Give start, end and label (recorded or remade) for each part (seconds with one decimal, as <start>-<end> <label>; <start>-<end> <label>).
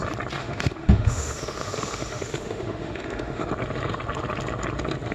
0.0-0.4 recorded; 0.4-3.5 remade; 3.5-5.1 recorded